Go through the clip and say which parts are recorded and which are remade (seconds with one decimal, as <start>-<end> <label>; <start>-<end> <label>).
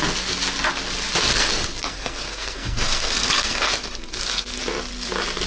0.0-1.3 recorded; 1.3-4.6 remade; 4.6-5.5 recorded